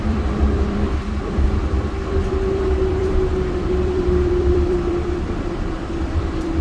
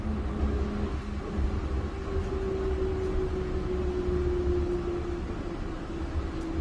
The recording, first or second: second